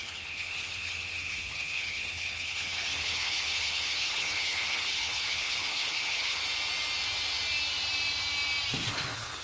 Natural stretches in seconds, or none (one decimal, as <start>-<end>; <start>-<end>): 6.4-8.9

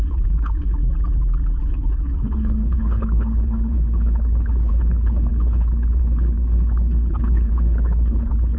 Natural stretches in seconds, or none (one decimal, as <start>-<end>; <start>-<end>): 0.8-1.6

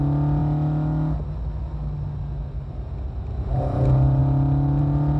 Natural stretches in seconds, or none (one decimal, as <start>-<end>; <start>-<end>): 0.0-5.2

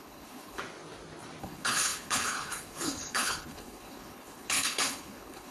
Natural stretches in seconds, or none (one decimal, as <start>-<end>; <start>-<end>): 0.6-1.4

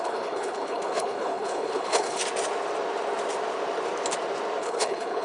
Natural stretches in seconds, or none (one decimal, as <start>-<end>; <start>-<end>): 2.2-4.6

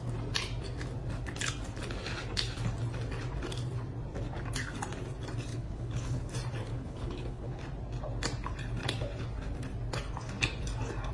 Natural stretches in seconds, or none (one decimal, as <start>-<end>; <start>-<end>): 0.0-5.5; 6.3-6.7; 7.6-11.1

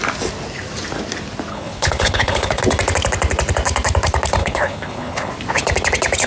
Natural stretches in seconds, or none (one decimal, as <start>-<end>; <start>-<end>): 0.0-1.5; 2.6-4.4; 5.3-6.3